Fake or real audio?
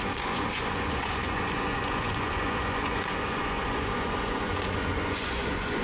fake